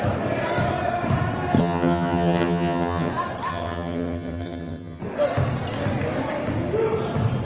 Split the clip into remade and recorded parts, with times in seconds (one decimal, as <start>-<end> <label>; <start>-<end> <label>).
0.0-1.6 recorded; 1.6-3.1 remade; 3.1-3.5 recorded; 3.5-5.0 remade; 5.0-7.4 recorded